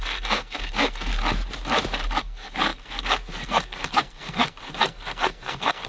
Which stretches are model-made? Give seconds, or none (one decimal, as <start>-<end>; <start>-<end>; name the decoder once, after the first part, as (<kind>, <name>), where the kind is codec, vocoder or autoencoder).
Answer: 0.0-1.1 (codec, SNAC); 2.2-5.9